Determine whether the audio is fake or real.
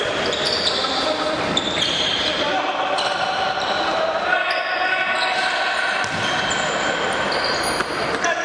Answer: real